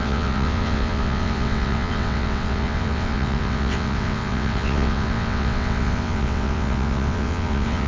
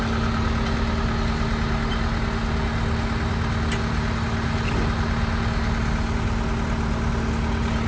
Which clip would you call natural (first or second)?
second